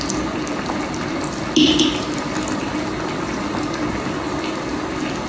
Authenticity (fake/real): real